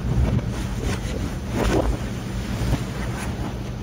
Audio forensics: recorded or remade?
recorded